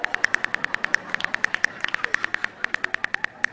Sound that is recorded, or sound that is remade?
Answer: recorded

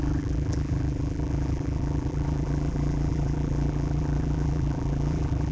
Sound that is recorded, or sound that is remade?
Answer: remade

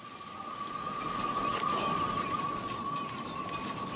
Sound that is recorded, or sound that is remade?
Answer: recorded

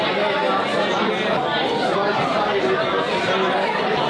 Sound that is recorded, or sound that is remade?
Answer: recorded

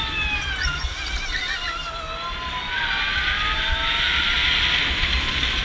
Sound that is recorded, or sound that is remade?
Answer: recorded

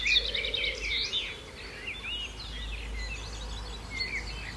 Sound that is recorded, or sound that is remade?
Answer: recorded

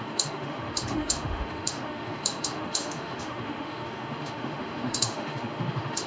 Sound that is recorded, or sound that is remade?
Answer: remade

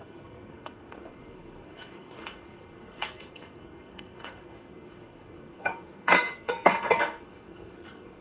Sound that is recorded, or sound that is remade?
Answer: remade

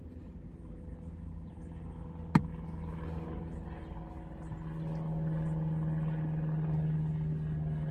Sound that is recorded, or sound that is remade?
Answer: recorded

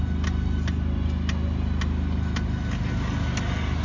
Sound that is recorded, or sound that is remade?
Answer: recorded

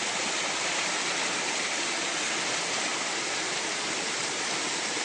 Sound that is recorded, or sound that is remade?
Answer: recorded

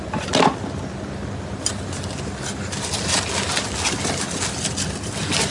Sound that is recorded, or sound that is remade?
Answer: recorded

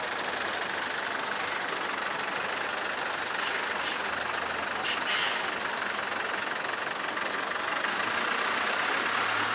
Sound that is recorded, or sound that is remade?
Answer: recorded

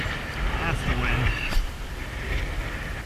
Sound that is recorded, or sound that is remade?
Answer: recorded